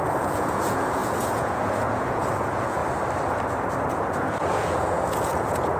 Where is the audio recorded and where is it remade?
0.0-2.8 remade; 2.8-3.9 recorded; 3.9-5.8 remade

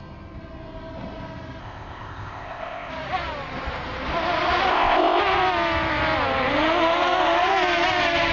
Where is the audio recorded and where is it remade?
0.0-1.6 recorded; 1.6-2.9 remade; 2.9-4.7 recorded; 4.7-5.2 remade; 5.2-8.3 recorded

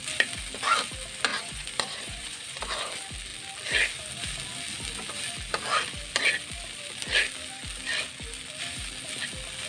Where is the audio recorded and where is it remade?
0.0-1.3 recorded; 1.3-2.9 remade; 2.9-9.7 recorded

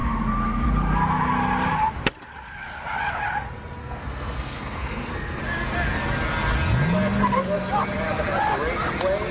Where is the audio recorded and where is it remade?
0.0-3.8 recorded; 3.8-5.4 remade; 5.4-9.3 recorded

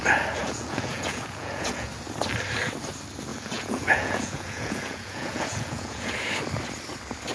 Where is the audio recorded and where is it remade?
0.0-0.4 recorded; 0.4-1.9 remade; 1.9-3.3 recorded; 3.3-6.1 remade; 6.1-7.3 recorded

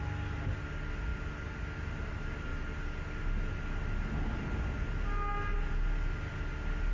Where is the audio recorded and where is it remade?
0.0-6.9 recorded